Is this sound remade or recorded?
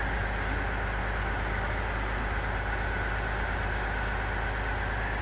recorded